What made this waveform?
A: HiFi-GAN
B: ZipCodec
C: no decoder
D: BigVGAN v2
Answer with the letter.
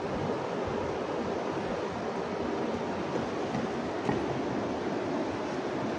C